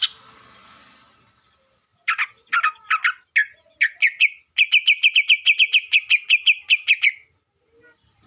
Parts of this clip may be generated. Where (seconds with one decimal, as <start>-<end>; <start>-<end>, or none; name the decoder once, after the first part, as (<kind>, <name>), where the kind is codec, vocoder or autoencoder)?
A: none